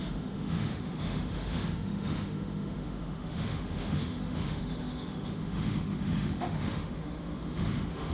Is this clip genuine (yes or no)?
no